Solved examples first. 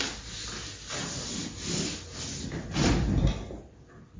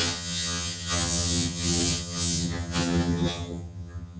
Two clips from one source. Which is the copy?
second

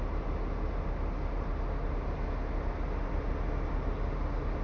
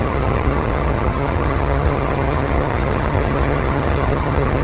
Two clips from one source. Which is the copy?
second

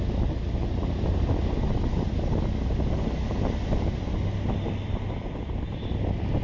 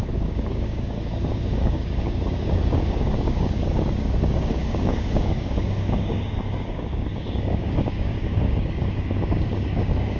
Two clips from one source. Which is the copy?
second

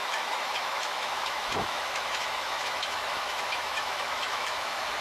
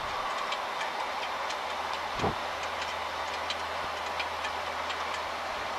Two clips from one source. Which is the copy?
first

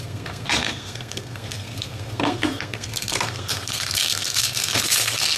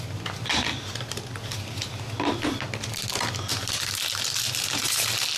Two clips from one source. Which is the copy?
first